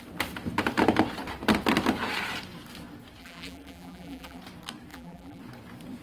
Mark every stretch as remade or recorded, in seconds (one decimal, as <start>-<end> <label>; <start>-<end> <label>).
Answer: 0.0-3.2 recorded; 3.2-4.4 remade; 4.4-4.9 recorded; 4.9-5.4 remade; 5.4-6.0 recorded